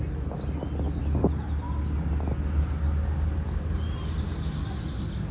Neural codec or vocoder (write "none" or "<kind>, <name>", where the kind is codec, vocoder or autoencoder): none